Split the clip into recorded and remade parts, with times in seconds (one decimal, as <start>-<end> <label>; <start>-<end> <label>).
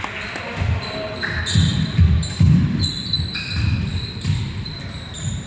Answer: 0.0-0.5 recorded; 0.5-1.1 remade; 1.1-1.7 recorded; 1.7-5.0 remade; 5.0-5.5 recorded